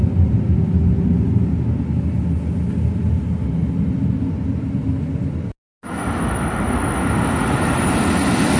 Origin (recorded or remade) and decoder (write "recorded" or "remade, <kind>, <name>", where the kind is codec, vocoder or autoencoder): recorded